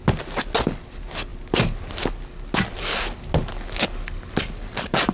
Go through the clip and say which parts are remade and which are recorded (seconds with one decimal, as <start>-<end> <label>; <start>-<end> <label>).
0.0-5.1 recorded